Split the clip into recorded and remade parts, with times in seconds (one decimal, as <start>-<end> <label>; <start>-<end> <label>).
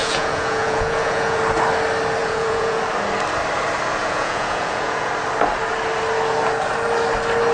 0.0-1.4 remade; 1.4-2.2 recorded; 2.2-2.8 remade; 2.8-4.0 recorded; 4.0-5.1 remade; 5.1-7.5 recorded